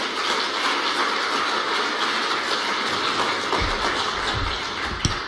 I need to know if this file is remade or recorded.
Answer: recorded